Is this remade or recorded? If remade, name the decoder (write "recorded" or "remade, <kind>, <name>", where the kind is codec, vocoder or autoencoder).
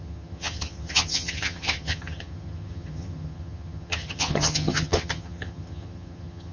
remade, vocoder, HiFi-GAN